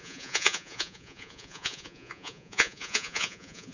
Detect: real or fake fake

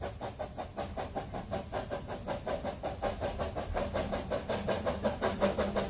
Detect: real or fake real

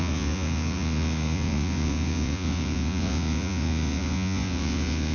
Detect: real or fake fake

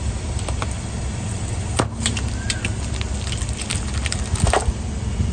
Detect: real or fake real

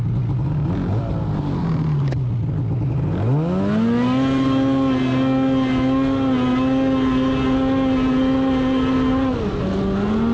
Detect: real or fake real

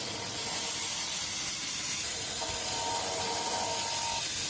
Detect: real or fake real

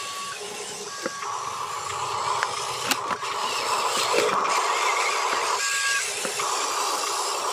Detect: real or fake real